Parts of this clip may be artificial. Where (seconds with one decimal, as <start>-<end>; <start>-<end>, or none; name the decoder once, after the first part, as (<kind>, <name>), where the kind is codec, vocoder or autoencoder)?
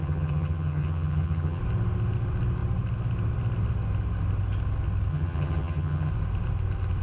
0.0-1.6 (vocoder, HiFi-GAN); 5.1-6.1